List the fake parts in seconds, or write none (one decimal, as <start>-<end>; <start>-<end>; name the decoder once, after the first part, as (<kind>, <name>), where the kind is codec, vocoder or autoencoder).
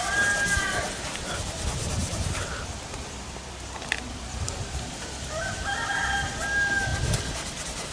2.0-6.0 (vocoder, BigVGAN v2)